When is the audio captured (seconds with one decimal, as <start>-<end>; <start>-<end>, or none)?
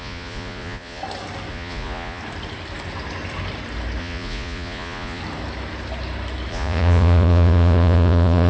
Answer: 1.0-1.5; 2.2-4.0; 5.2-6.5